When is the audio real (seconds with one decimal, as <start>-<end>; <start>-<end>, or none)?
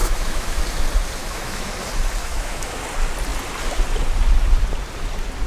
0.6-1.2; 1.7-2.2; 2.8-5.5